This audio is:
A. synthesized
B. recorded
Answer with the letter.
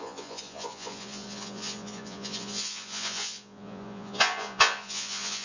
A